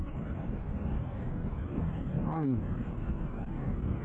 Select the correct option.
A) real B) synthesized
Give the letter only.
B